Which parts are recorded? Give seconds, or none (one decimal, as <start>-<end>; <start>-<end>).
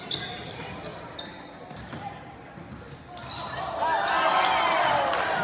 0.0-0.9; 2.6-5.4